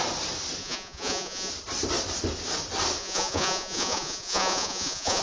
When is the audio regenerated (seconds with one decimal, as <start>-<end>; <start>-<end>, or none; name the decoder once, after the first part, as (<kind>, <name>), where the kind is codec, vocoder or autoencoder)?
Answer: 0.6-1.5 (vocoder, Vocos); 3.0-5.2

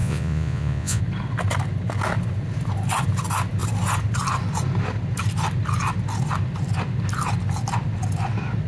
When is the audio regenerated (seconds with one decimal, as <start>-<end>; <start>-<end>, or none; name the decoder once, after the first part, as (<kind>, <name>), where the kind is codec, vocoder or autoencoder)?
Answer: 0.0-1.0 (vocoder, Vocos)

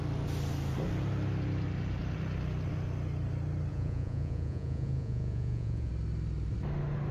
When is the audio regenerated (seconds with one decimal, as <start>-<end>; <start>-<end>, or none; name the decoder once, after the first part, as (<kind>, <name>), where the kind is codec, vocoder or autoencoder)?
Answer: 3.7-5.9 (vocoder, Vocos)

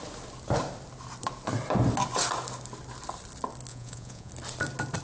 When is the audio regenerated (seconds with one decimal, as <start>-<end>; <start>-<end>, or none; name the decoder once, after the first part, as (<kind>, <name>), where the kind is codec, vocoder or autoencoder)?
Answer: 3.7-4.3 (vocoder, Vocos)